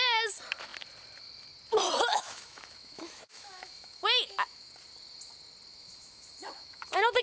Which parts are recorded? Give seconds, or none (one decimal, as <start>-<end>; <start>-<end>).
0.0-2.1; 4.7-5.7